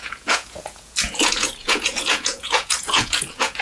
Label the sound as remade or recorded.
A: remade